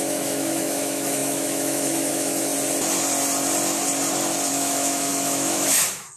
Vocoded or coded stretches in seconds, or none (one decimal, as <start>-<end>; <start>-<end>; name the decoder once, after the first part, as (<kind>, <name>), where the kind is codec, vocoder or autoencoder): 0.0-2.5 (autoencoder, DAC-VAE); 4.5-6.2